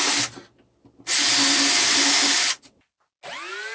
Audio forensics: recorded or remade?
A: recorded